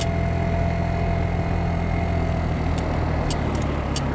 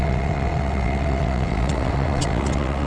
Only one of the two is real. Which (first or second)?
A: first